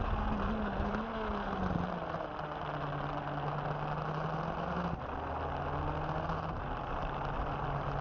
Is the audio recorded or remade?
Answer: recorded